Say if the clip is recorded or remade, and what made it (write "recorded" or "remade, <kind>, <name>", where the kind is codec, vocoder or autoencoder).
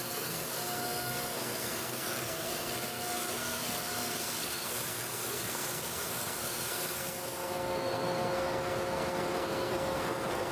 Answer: remade, codec, SNAC